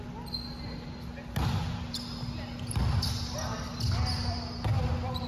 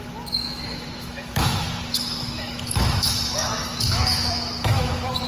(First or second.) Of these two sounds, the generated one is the second